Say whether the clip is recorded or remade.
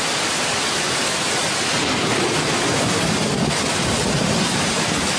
remade